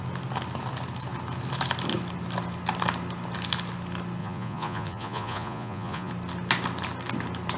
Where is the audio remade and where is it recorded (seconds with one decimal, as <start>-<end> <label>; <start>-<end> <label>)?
0.0-4.2 recorded; 4.2-6.1 remade; 6.1-7.6 recorded